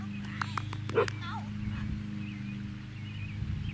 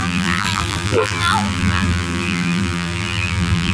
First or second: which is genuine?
first